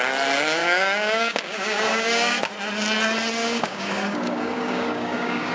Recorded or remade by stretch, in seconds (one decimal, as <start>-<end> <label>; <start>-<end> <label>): 0.0-0.6 recorded; 0.6-2.5 remade; 2.5-3.4 recorded; 3.4-5.5 remade

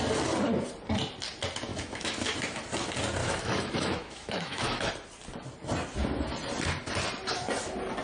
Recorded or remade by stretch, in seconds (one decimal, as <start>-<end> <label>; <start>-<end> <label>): 0.0-1.7 recorded; 1.7-2.3 remade; 2.3-3.2 recorded; 3.2-4.9 remade; 4.9-8.0 recorded

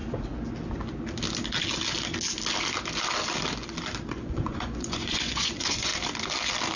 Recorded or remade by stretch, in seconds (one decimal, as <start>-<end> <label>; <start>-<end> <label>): 0.0-4.1 recorded; 4.1-5.9 remade; 5.9-6.8 recorded

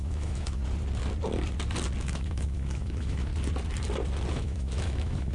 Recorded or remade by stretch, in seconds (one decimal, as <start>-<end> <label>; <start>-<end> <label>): 0.0-0.6 remade; 0.6-2.0 recorded; 2.0-3.3 remade; 3.3-4.3 recorded; 4.3-5.3 remade

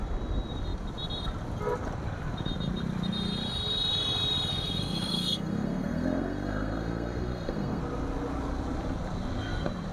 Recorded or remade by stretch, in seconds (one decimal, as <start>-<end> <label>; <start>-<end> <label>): 0.0-4.5 recorded; 4.5-7.8 remade; 7.8-9.9 recorded

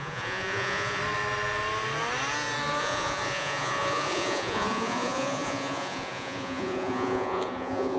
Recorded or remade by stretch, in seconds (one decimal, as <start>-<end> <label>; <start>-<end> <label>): 0.0-1.0 remade; 1.0-2.8 recorded; 2.8-8.0 remade

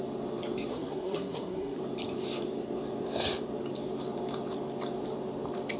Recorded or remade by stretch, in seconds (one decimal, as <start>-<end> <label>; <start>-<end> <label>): 0.0-0.7 recorded; 0.7-1.8 remade; 1.8-5.8 recorded